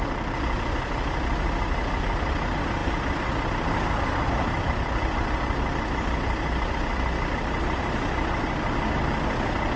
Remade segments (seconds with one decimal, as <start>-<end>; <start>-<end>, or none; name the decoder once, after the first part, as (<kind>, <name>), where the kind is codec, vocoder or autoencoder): none